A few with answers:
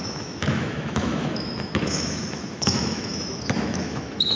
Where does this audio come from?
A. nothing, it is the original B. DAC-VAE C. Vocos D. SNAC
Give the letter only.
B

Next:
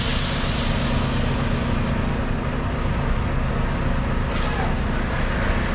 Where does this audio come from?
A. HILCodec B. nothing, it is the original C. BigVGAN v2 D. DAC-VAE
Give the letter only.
B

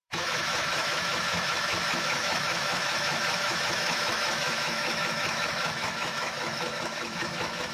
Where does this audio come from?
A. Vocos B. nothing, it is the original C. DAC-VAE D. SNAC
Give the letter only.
C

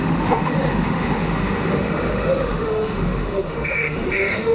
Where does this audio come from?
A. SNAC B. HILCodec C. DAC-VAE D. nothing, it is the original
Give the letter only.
C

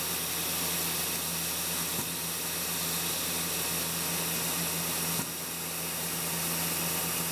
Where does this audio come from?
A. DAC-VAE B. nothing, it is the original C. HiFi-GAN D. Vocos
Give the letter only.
B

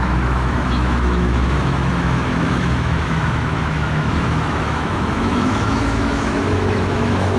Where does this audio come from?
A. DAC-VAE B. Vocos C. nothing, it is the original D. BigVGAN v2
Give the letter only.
A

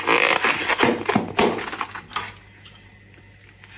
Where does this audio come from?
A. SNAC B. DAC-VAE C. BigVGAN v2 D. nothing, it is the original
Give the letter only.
D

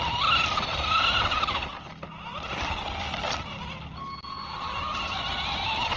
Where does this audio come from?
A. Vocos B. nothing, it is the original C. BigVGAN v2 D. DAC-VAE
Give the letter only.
B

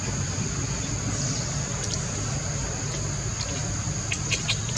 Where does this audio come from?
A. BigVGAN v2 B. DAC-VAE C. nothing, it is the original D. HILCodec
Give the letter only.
C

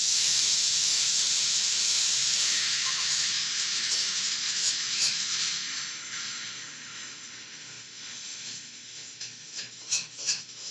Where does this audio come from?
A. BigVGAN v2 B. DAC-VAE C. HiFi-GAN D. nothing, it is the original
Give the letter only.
B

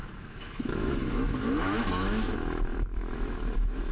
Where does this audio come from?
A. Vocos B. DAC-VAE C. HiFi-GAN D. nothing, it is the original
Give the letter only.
B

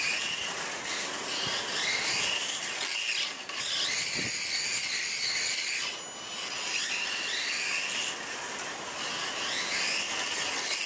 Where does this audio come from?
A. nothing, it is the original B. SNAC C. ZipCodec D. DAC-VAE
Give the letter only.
A